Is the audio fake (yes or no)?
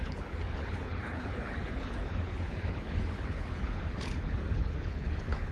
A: yes